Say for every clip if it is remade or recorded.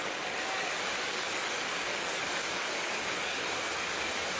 remade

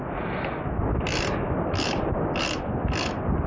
recorded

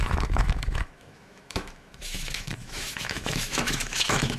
remade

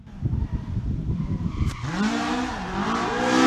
recorded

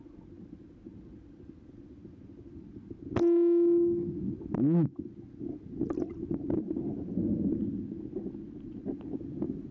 recorded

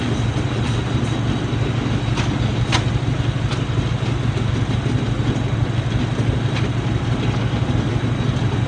recorded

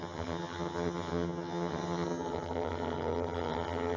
remade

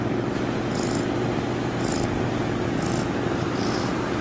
recorded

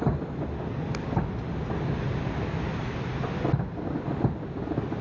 recorded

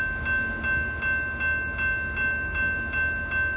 recorded